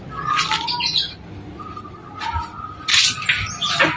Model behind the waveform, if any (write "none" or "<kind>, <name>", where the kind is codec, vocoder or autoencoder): none